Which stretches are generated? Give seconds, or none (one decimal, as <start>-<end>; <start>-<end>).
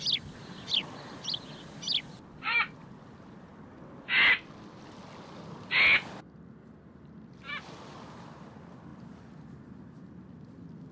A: none